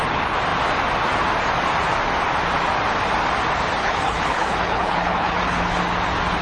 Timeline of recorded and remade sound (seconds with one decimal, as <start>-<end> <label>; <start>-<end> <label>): 0.0-3.8 recorded; 3.8-5.8 remade; 5.8-6.4 recorded